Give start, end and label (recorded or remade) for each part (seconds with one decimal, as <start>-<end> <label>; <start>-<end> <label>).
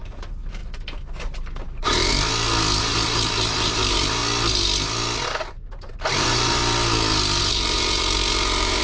0.0-0.6 remade; 0.6-1.5 recorded; 1.5-2.1 remade; 2.1-2.8 recorded; 2.8-4.2 remade; 4.2-5.5 recorded; 5.5-6.6 remade; 6.6-7.4 recorded; 7.4-8.8 remade